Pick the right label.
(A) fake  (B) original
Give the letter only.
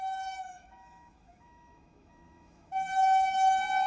A